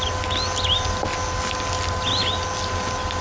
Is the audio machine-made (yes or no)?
no